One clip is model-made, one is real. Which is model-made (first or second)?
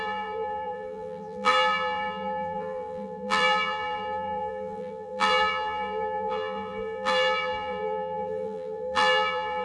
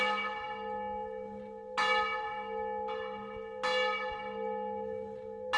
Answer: first